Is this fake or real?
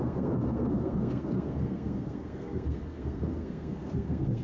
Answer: fake